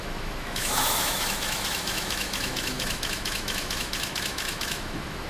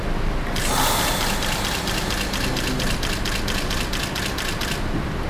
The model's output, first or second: first